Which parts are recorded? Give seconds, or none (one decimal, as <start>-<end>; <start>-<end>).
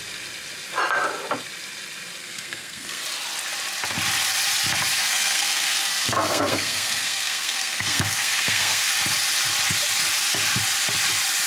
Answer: 0.0-2.2; 3.0-5.0; 8.9-11.5